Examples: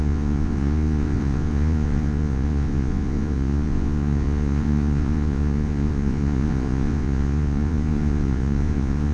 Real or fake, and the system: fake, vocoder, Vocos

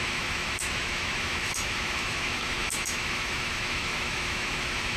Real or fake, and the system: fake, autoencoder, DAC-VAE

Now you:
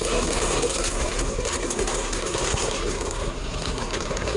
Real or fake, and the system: fake, codec, SNAC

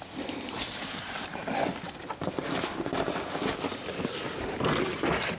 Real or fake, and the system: real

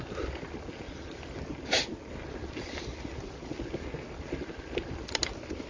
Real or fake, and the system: real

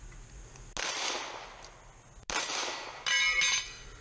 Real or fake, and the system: real